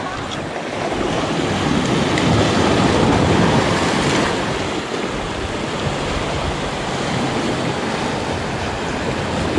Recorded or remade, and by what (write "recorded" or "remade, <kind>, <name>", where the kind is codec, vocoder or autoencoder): recorded